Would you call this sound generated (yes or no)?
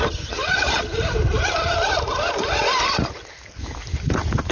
no